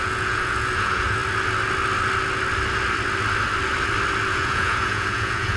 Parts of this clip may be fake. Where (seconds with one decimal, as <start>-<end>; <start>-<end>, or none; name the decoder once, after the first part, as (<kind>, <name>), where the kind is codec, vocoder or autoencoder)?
0.0-1.2 (vocoder, Vocos); 4.3-5.6